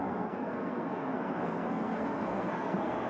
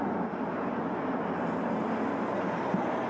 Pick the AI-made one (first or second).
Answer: first